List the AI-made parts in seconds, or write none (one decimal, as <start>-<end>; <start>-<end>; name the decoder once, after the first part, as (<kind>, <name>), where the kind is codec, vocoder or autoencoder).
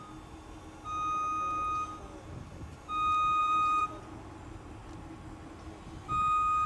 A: 3.4-4.1 (vocoder, BigVGAN v2)